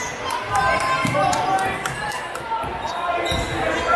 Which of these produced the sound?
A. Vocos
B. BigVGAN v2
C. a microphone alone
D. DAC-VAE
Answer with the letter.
C